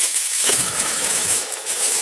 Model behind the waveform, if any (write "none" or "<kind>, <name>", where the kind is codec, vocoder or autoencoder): autoencoder, DAC-VAE